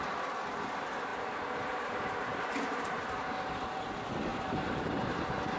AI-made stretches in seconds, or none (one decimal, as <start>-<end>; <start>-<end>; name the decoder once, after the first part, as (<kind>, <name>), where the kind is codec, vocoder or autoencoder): 1.1-3.3 (vocoder, BigVGAN v2); 4.3-5.1